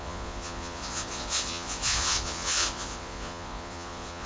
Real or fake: fake